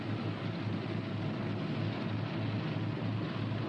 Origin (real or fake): real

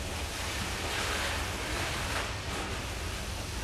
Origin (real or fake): real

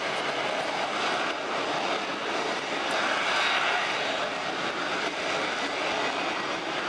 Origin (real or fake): real